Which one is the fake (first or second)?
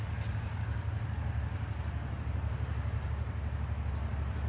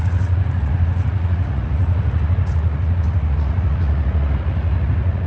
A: second